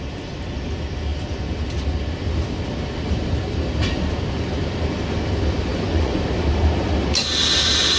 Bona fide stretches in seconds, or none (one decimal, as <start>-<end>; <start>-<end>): 0.0-5.7; 6.2-8.0